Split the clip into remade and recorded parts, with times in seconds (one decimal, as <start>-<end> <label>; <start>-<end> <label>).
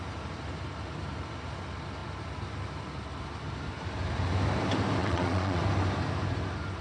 0.0-5.0 recorded; 5.0-5.6 remade; 5.6-6.8 recorded